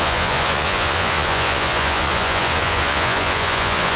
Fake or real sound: fake